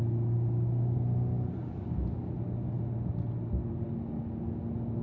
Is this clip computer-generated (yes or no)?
no